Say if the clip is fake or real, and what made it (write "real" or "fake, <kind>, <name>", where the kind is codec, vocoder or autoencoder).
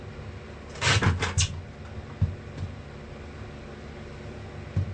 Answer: real